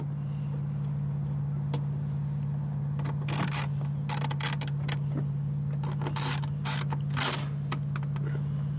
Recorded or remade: recorded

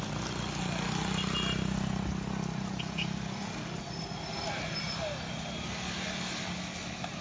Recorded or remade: recorded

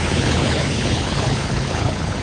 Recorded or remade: remade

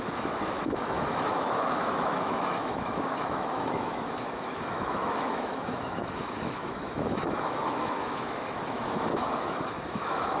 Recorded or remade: remade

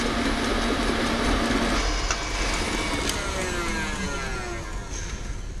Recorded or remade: recorded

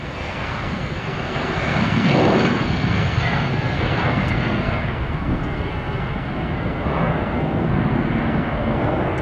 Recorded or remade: remade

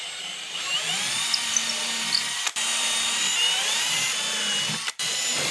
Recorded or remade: remade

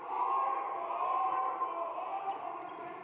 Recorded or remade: recorded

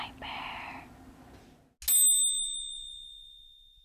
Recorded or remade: recorded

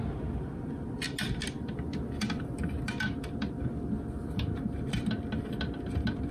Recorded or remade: recorded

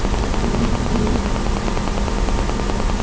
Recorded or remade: recorded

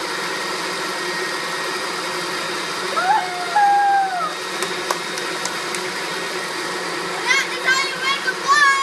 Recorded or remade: recorded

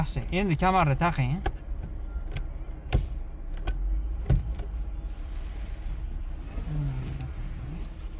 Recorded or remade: recorded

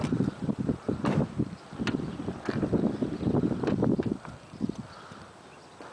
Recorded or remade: recorded